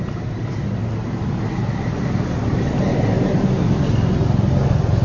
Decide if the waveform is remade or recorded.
recorded